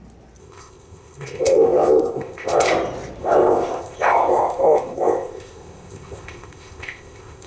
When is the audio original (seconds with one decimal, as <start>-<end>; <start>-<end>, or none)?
0.0-0.4; 2.7-3.2